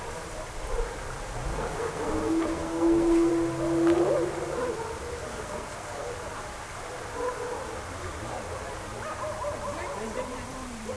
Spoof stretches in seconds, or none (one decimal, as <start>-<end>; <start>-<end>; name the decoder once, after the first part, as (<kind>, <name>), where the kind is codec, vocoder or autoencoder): 1.5-3.3 (codec, SNAC); 5.3-6.1